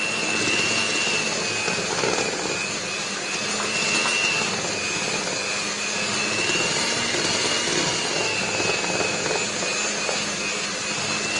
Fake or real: real